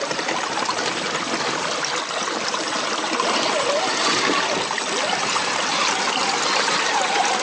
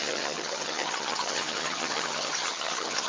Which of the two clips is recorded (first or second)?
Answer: first